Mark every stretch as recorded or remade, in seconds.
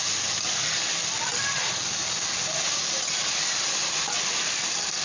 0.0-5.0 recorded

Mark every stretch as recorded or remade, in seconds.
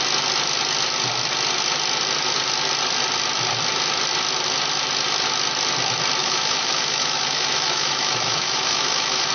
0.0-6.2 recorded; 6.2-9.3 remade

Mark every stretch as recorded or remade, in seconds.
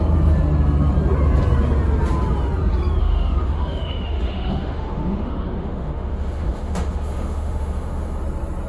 0.0-3.0 recorded; 3.0-8.2 remade; 8.2-8.7 recorded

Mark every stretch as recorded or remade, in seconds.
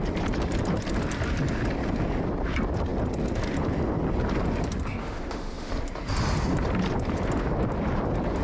0.0-5.0 recorded; 5.0-5.7 remade; 5.7-8.4 recorded